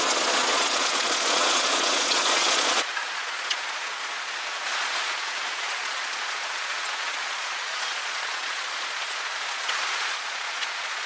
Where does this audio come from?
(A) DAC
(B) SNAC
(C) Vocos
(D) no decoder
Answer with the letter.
C